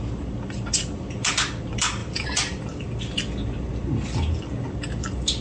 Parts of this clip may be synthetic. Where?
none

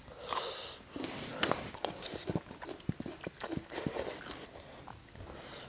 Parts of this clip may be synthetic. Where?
none

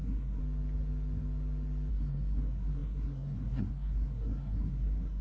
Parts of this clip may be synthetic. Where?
0.0-0.4 (codec, SNAC); 1.9-5.2

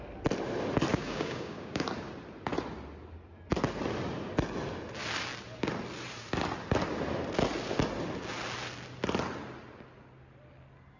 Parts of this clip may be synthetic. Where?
0.9-1.9 (codec, DAC)

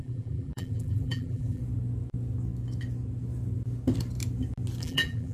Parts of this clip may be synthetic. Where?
0.0-1.6 (vocoder, BigVGAN v2); 4.8-5.3

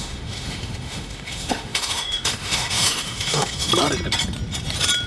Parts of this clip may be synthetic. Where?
0.0-3.7 (autoencoder, DAC-VAE)

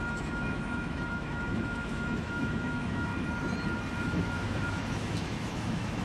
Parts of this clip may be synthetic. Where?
0.0-3.1 (autoencoder, DAC-VAE); 4.0-6.0